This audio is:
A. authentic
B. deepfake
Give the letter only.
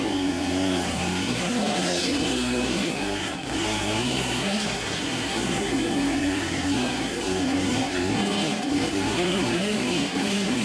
B